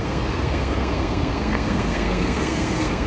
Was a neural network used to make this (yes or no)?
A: yes